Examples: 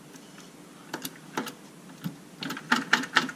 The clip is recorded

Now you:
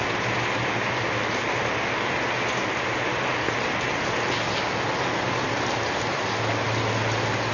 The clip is recorded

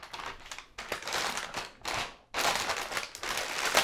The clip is recorded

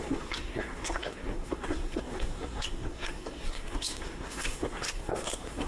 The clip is remade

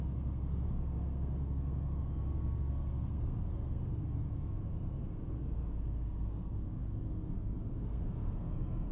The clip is remade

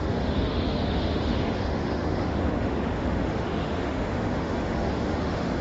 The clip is remade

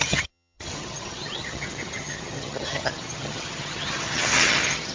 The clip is remade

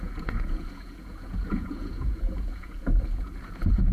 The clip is remade